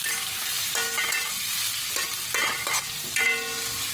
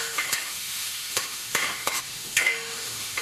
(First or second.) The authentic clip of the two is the first